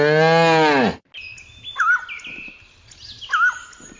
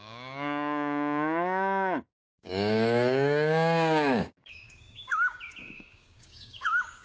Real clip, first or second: first